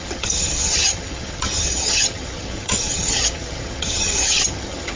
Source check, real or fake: fake